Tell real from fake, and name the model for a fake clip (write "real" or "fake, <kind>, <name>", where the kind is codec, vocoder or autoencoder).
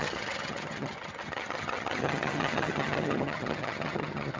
fake, vocoder, HiFi-GAN